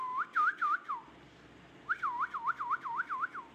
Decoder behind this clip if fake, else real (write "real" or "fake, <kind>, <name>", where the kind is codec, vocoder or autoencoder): real